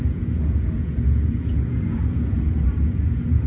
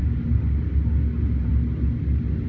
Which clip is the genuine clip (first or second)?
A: second